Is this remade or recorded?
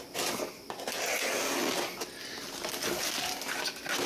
recorded